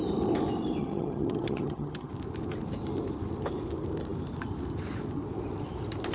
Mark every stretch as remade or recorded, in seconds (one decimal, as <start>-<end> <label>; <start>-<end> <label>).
0.0-0.8 recorded; 0.8-2.1 remade; 2.1-6.1 recorded